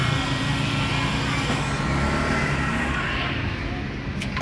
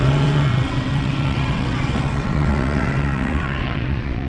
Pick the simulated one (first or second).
second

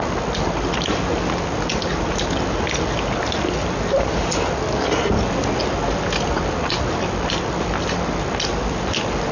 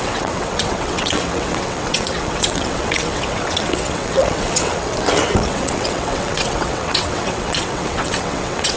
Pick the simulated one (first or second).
second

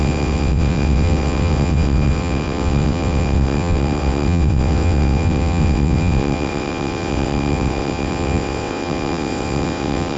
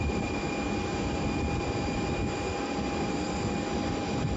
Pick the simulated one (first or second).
first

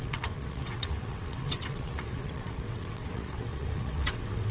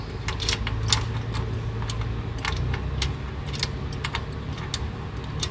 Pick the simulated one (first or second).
first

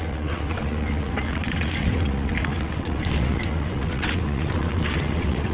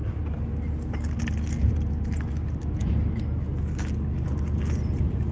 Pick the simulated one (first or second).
first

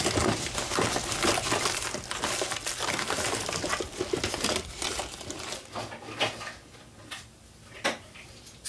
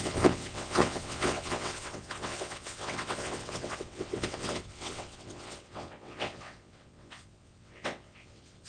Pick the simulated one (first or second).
second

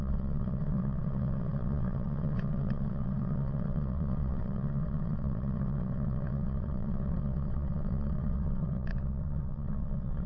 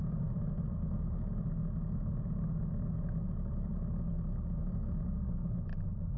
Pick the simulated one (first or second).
first